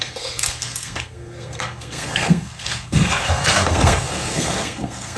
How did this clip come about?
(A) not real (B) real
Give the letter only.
A